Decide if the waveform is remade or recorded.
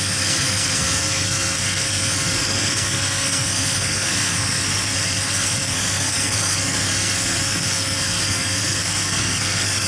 remade